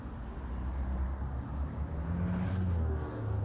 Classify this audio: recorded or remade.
recorded